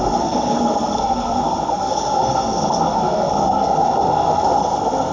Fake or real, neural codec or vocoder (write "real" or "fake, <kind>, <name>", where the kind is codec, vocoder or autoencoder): fake, codec, SNAC